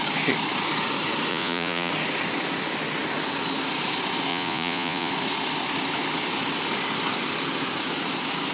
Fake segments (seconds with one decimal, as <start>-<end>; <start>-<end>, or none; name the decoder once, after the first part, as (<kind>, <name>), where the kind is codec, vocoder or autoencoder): 1.3-1.9 (vocoder, Vocos); 4.3-5.1